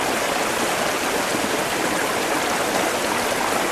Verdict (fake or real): real